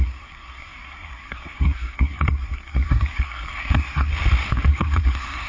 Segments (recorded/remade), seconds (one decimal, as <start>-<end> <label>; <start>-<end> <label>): 0.0-4.1 remade; 4.1-4.7 recorded; 4.7-5.5 remade